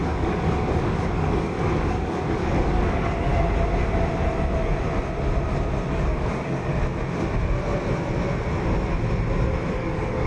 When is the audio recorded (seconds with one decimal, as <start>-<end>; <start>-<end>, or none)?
3.3-5.9; 6.7-9.7